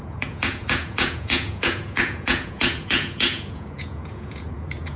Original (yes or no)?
no